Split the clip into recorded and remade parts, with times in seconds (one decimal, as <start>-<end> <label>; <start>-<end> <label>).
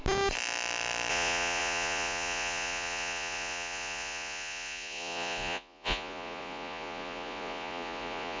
0.0-1.1 recorded; 1.1-8.4 remade